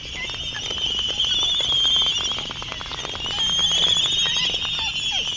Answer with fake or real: real